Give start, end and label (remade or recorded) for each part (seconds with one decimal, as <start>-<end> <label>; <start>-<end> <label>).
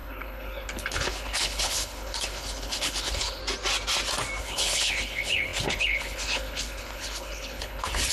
0.0-3.4 remade; 3.4-4.4 recorded; 4.4-8.1 remade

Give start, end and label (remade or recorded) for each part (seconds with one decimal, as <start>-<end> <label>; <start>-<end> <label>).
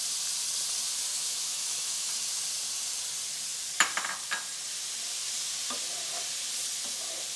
0.0-1.1 recorded; 1.1-2.1 remade; 2.1-7.4 recorded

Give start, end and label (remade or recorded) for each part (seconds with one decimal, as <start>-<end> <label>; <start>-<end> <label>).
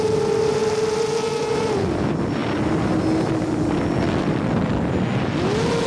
0.0-0.6 remade; 0.6-1.4 recorded; 1.4-2.4 remade; 2.4-5.9 recorded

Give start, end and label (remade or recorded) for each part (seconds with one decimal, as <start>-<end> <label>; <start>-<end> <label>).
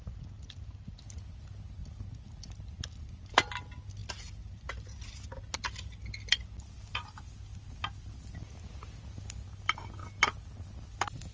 0.0-11.3 recorded